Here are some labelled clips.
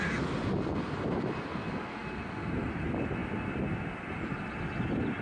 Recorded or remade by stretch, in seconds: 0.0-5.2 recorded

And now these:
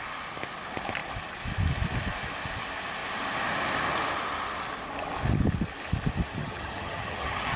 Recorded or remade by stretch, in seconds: 0.0-6.4 recorded; 6.4-7.6 remade

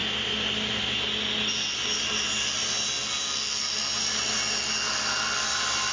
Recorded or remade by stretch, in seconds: 0.0-5.9 recorded